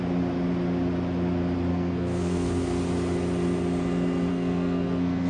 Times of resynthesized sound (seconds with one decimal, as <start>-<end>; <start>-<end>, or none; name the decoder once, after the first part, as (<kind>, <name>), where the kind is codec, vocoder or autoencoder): 1.7-2.8 (codec, SNAC); 4.3-5.3